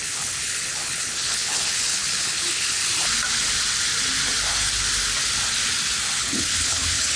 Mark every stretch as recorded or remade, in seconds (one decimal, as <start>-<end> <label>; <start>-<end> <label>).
0.0-2.8 remade; 2.8-6.2 recorded; 6.2-7.2 remade